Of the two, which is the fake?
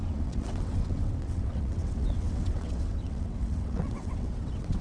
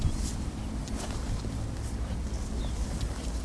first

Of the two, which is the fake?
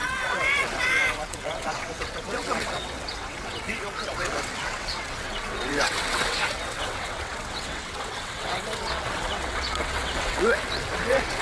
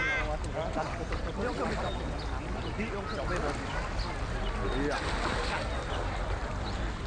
first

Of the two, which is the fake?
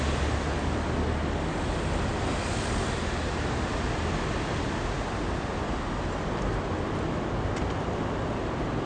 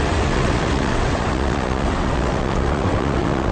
second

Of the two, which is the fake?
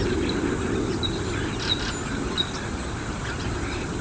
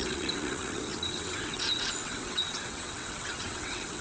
second